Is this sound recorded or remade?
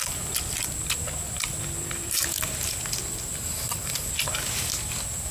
recorded